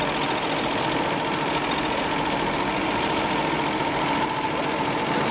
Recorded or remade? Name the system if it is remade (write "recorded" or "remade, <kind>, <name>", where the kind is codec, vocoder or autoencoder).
recorded